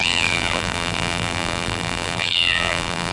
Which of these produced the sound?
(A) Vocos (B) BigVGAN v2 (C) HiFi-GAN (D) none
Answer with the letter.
B